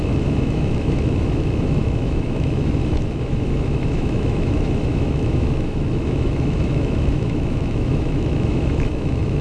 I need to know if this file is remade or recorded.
remade